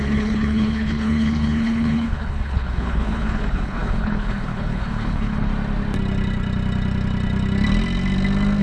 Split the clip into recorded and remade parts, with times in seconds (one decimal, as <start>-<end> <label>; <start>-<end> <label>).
0.0-5.5 remade; 5.5-8.6 recorded

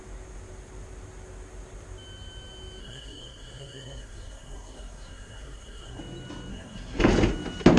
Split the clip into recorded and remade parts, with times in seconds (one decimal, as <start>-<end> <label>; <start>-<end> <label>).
0.0-2.8 recorded; 2.8-6.0 remade; 6.0-6.5 recorded; 6.5-7.0 remade; 7.0-7.8 recorded

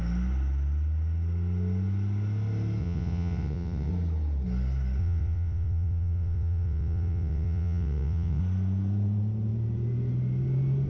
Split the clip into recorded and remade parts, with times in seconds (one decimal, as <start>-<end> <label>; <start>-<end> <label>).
0.0-2.8 recorded; 2.8-3.9 remade; 3.9-5.0 recorded; 5.0-8.4 remade; 8.4-10.9 recorded